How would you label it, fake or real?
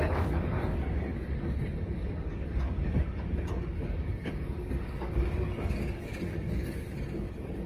fake